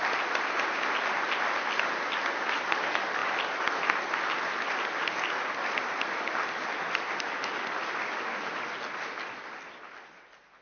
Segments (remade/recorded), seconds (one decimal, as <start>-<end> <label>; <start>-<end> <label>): 0.0-10.6 recorded